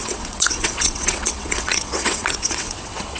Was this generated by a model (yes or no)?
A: yes